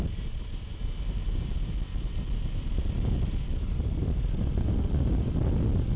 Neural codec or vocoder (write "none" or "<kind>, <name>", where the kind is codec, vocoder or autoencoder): none